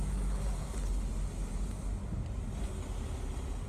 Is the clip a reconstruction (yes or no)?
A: no